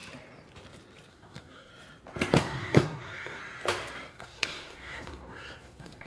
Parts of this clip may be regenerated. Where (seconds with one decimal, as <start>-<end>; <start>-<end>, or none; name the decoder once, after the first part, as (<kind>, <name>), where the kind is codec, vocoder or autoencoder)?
1.1-1.7 (codec, SNAC); 2.4-3.4; 4.1-6.1